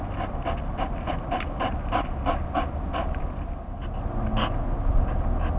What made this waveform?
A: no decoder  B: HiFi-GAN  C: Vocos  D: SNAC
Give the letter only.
A